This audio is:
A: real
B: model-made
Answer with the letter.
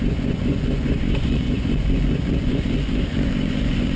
B